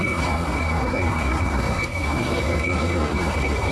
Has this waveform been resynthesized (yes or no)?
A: yes